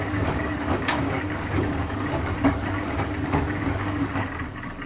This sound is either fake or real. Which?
fake